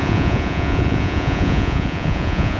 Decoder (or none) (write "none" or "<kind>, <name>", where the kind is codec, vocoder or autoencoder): vocoder, Vocos